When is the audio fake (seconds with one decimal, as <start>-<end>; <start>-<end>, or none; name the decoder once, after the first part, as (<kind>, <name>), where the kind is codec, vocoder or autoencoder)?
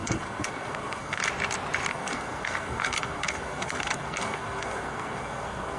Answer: 0.0-1.2 (codec, SNAC); 1.9-5.8